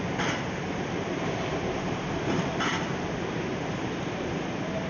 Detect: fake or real real